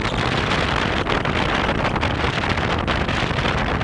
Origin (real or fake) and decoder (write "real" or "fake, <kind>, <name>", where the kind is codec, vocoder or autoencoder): fake, vocoder, BigVGAN v2